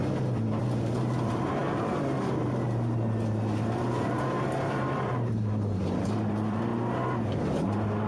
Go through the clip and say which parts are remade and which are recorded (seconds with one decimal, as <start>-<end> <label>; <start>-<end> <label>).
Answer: 0.0-0.6 recorded; 0.6-6.7 remade; 6.7-7.4 recorded; 7.4-8.1 remade